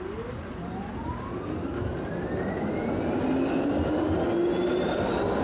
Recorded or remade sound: recorded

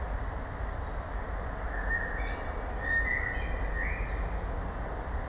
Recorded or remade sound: recorded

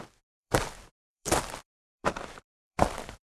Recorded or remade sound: remade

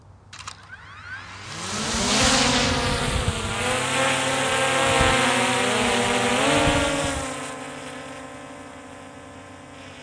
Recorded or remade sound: recorded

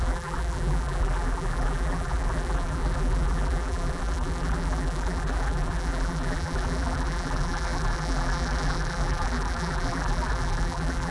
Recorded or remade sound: remade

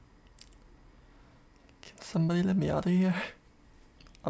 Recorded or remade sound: recorded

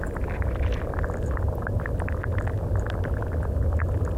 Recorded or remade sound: recorded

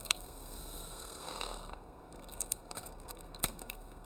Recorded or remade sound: remade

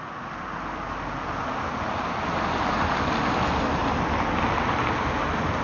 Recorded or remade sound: recorded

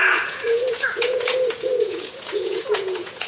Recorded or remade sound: remade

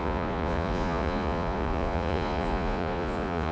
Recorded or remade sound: remade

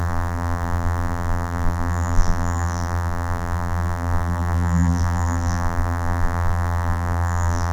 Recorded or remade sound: remade